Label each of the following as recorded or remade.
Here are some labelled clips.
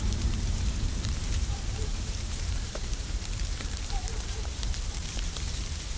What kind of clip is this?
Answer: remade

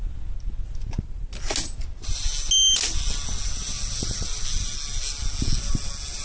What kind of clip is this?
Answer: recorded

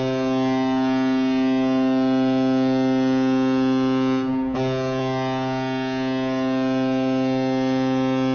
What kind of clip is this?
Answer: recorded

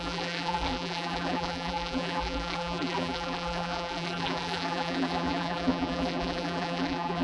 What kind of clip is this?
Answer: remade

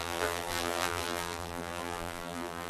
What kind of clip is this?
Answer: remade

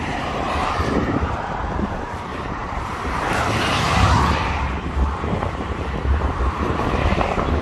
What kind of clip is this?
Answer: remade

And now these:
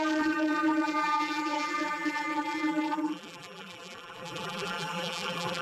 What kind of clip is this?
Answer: remade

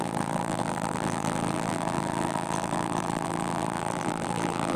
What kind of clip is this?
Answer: remade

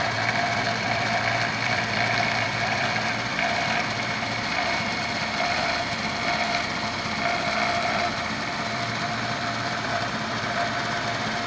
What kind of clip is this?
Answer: remade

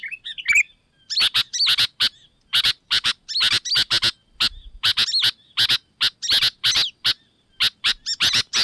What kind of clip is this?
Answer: recorded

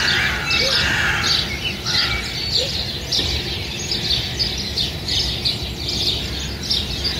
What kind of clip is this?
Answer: recorded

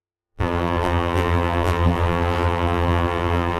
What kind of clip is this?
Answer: remade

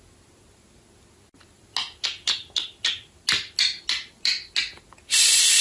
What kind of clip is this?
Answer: recorded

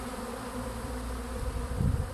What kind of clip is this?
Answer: remade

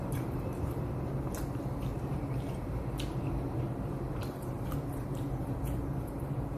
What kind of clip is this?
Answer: remade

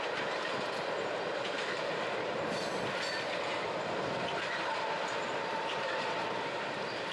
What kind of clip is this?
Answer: recorded